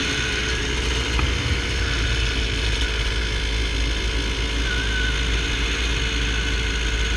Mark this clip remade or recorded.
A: recorded